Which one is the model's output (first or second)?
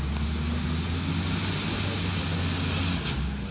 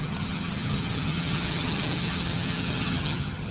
second